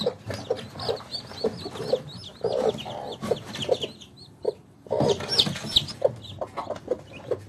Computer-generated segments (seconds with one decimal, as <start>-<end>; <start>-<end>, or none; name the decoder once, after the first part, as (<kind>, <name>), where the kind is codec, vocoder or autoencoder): none